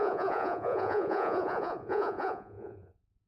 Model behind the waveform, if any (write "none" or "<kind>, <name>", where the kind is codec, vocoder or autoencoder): vocoder, Vocos